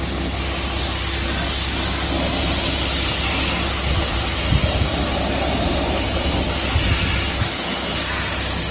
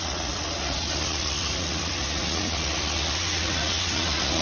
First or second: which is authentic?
first